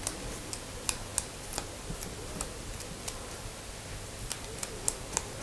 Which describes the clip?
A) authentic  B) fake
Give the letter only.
A